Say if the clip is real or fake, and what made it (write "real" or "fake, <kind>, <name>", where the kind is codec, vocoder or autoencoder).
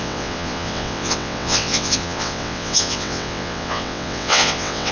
fake, vocoder, WaveNeXt